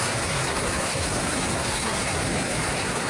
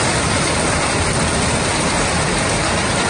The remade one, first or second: first